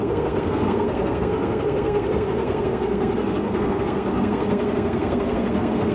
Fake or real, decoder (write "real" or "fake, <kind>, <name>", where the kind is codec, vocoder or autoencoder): fake, codec, SNAC